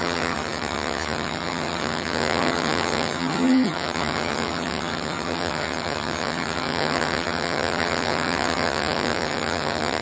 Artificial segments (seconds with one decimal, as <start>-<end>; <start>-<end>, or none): 0.0-10.0